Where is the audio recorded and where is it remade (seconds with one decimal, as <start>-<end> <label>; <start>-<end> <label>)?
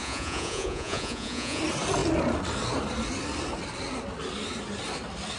0.0-1.6 remade; 1.6-5.4 recorded